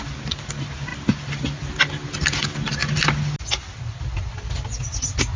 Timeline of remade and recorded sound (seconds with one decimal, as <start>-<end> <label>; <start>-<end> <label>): 0.0-5.4 recorded